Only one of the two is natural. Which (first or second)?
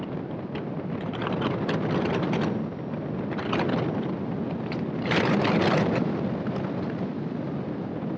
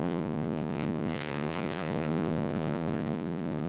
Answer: first